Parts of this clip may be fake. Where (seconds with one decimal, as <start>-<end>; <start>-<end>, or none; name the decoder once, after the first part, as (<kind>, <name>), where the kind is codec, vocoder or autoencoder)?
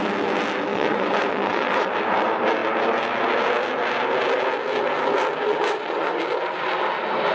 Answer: 0.7-1.9 (vocoder, WaveNeXt); 5.5-6.2